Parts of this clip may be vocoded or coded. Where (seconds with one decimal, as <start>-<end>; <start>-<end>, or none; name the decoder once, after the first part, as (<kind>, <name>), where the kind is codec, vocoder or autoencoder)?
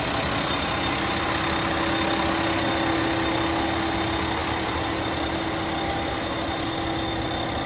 none